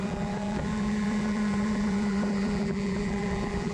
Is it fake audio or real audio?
fake